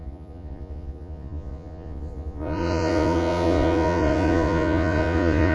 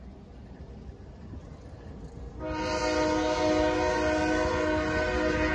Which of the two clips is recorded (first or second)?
second